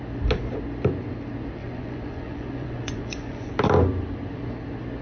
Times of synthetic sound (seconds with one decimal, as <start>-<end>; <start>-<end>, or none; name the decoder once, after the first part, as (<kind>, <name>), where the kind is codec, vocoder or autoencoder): 1.6-3.5 (vocoder, Vocos)